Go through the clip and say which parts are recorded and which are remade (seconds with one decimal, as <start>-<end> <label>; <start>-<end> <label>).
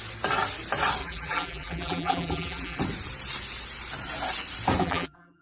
0.0-1.0 recorded; 1.0-2.8 remade; 2.8-4.8 recorded; 4.8-5.4 remade